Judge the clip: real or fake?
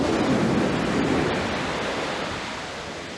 real